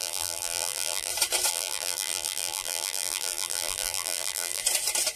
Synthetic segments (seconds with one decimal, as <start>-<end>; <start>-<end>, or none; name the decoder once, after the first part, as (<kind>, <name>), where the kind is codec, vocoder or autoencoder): 0.0-1.1 (vocoder, BigVGAN v2); 1.5-4.6